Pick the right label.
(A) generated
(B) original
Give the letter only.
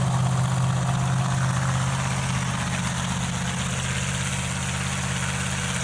B